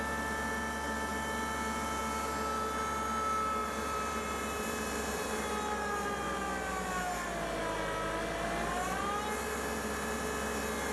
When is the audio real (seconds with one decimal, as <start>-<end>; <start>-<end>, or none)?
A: 0.0-3.6; 5.4-10.9